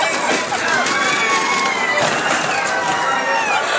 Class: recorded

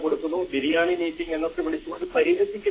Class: remade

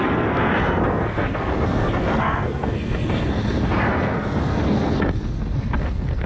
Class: remade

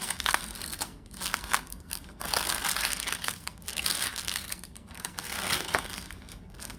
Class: remade